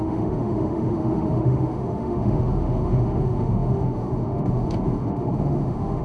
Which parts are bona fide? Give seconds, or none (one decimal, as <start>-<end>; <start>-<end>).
none